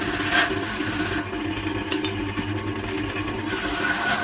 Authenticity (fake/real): real